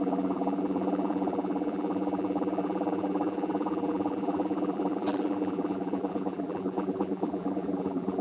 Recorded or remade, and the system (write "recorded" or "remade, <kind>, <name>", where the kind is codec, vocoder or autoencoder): remade, vocoder, BigVGAN v2